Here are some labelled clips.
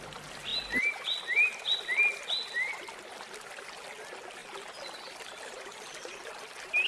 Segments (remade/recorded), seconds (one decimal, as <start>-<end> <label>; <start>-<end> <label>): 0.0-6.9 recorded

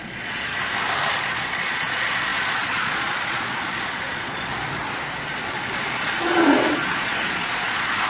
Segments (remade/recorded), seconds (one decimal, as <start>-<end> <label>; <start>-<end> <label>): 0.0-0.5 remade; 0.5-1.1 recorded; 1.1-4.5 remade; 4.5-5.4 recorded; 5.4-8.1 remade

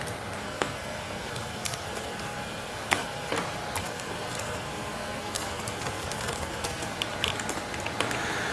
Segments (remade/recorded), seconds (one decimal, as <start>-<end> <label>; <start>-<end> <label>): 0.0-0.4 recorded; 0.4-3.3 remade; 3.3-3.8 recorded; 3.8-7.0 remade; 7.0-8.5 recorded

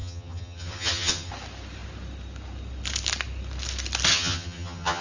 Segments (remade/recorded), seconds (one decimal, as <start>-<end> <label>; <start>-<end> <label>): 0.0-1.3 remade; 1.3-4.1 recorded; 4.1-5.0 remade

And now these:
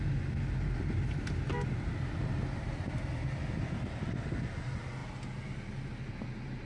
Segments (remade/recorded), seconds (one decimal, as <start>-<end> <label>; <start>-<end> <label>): 0.0-6.7 recorded

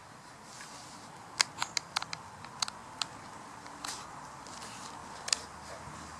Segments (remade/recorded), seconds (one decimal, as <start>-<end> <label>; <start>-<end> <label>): 0.0-6.2 recorded